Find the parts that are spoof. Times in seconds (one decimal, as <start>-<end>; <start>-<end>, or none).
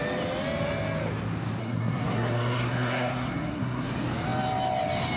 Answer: 1.6-3.9